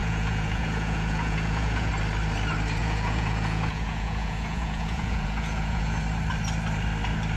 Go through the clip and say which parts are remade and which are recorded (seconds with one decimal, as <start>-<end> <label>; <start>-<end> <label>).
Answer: 0.0-1.9 remade; 1.9-2.8 recorded; 2.8-6.0 remade; 6.0-7.4 recorded